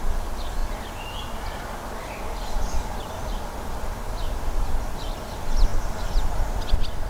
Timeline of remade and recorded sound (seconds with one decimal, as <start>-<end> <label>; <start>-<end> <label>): 0.0-7.1 recorded